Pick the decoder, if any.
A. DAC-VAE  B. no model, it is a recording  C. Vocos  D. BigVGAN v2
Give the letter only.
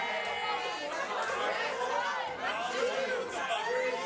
B